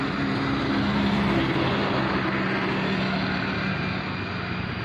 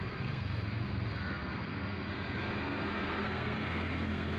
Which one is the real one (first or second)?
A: first